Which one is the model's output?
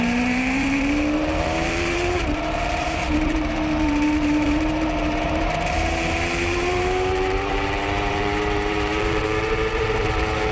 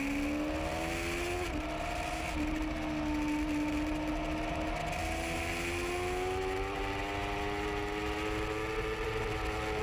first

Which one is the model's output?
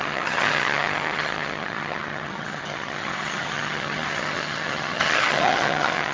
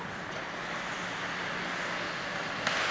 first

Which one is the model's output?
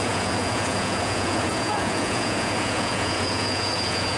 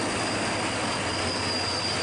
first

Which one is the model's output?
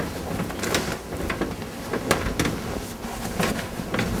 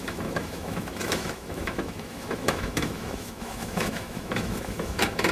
second